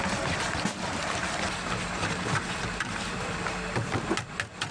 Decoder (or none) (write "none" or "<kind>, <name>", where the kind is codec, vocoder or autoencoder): none